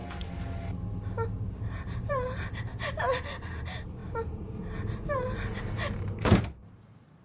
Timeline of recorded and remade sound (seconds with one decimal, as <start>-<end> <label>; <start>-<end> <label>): 0.0-1.4 recorded; 1.4-2.7 remade; 2.7-3.6 recorded; 3.6-7.2 remade